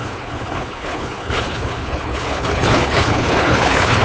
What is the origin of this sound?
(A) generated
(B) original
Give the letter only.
A